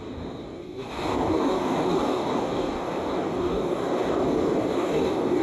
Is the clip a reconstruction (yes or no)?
yes